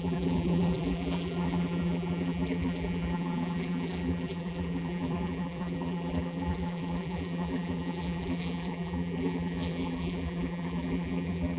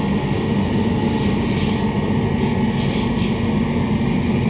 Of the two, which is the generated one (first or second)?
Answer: first